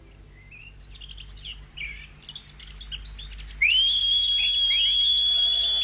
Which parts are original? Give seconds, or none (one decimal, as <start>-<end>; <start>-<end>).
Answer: 0.0-4.0; 4.7-5.8